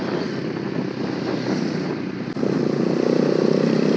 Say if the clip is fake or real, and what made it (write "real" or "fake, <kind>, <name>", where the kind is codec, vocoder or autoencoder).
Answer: real